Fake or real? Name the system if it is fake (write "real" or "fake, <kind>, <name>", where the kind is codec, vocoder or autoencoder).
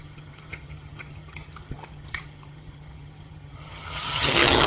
fake, vocoder, HiFi-GAN